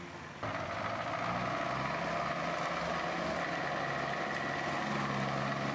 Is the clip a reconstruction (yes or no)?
no